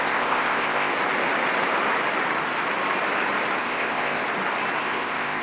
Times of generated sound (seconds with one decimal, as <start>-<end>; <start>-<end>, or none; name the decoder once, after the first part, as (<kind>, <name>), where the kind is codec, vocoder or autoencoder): 0.0-0.9 (codec, ZipCodec); 3.6-4.2; 4.8-5.4